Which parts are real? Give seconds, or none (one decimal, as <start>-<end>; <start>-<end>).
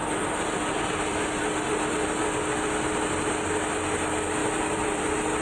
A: 0.0-4.4; 5.0-5.4